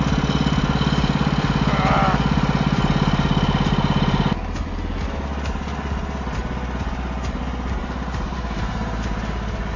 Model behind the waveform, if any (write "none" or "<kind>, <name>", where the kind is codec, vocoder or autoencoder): none